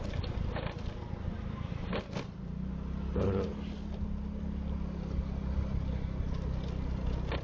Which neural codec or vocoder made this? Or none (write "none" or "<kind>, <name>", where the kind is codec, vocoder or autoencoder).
none